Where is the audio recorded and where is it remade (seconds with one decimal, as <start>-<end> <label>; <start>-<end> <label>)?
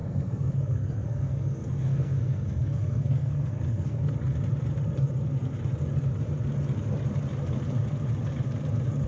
0.0-4.1 remade; 4.1-9.1 recorded